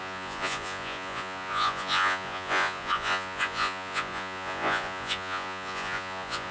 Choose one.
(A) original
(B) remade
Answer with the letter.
B